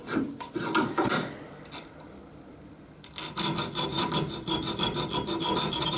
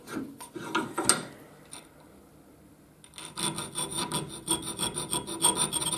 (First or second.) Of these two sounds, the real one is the second